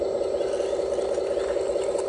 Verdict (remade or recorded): recorded